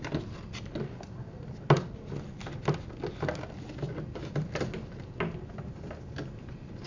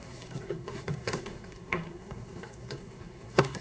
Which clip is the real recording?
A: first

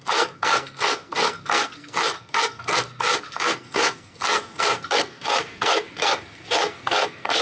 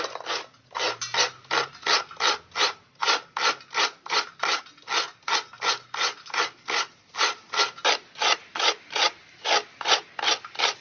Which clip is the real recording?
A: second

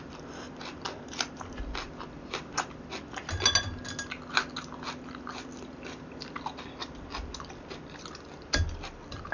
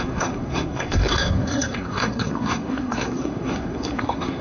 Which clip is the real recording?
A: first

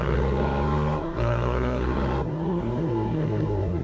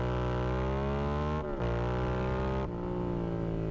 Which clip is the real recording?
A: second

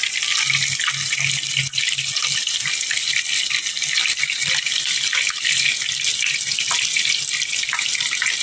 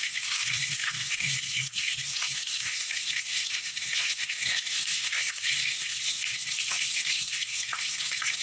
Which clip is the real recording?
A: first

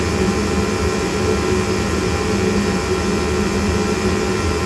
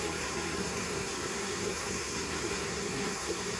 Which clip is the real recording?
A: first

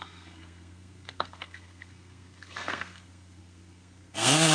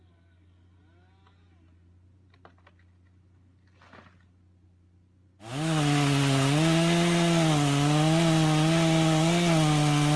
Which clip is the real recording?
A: second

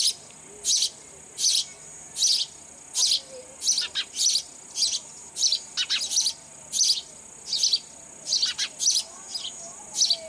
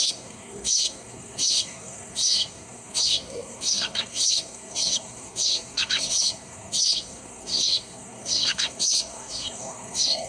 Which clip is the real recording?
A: first